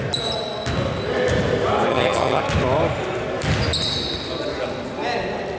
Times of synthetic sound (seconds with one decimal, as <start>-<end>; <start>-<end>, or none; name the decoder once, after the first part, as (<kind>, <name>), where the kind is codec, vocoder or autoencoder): 1.9-2.4 (vocoder, HiFi-GAN)